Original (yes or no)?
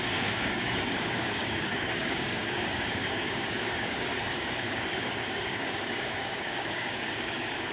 no